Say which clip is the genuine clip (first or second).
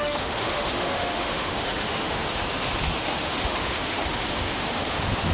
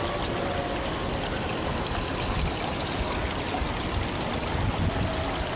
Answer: second